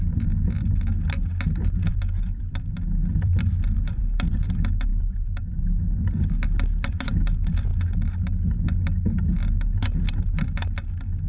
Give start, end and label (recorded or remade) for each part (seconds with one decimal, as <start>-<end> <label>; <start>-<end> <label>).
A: 0.0-1.3 remade; 1.3-1.9 recorded; 1.9-7.7 remade; 7.7-11.3 recorded